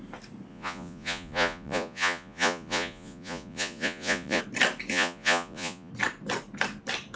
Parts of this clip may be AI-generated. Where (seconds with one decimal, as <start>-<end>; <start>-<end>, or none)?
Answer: 0.5-4.4; 4.9-5.9